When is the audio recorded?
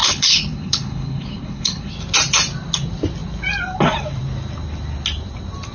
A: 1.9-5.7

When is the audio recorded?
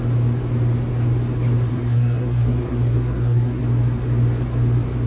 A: 0.0-1.7; 3.6-5.1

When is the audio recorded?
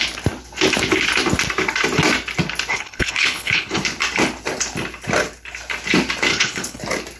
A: 0.0-2.7; 3.8-6.3; 6.8-7.2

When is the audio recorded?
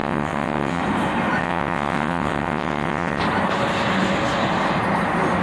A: 0.8-1.4; 3.2-5.4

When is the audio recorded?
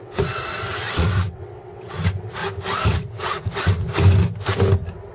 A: 2.4-2.9; 3.9-5.1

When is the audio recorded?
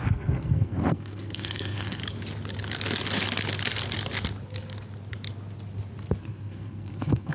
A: 2.0-6.2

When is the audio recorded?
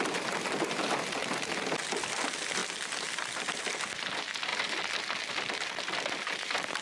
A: 0.0-6.8